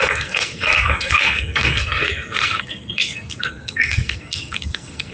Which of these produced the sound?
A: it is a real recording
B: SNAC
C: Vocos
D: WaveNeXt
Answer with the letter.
B